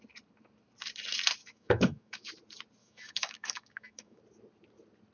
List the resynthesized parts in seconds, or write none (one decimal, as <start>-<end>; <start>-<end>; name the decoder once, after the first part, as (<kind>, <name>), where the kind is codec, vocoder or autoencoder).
1.4-2.3 (autoencoder, DAC-VAE); 2.8-4.2